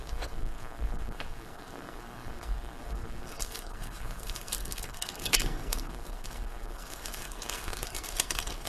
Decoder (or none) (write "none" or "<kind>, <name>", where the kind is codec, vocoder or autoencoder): codec, SNAC